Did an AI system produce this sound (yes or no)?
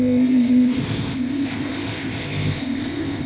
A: yes